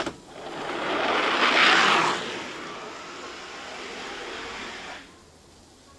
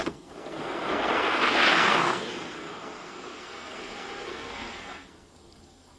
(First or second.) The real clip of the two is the first